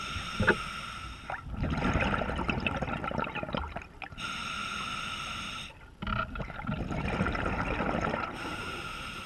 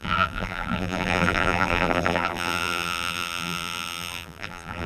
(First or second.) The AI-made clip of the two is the second